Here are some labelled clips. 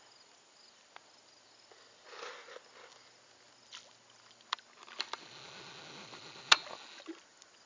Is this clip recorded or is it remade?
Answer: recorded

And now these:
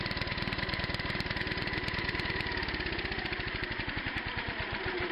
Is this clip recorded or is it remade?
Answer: remade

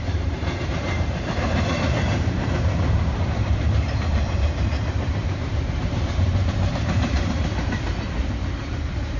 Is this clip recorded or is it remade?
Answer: remade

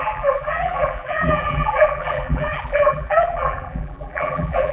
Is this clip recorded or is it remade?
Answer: remade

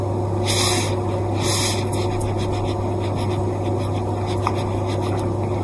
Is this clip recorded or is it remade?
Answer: recorded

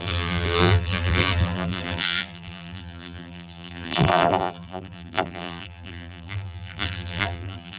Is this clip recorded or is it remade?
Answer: remade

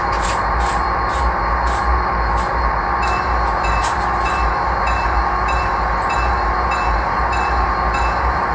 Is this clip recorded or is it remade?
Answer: remade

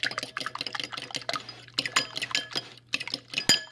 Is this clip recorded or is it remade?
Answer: recorded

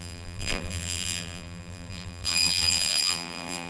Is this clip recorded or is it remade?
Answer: remade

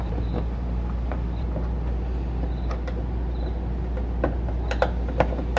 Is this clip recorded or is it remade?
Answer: recorded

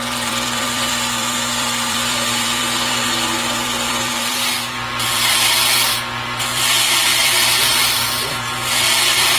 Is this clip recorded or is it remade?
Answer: remade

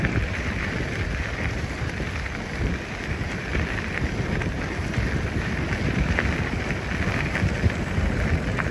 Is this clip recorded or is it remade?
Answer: remade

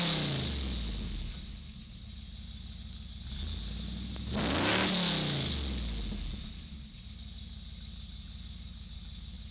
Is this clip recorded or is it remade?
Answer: recorded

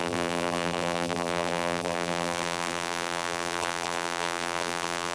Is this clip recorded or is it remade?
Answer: remade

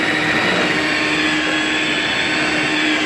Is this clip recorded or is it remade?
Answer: recorded